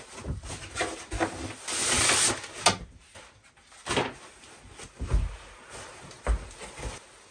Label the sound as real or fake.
real